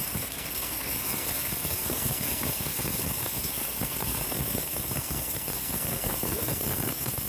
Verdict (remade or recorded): remade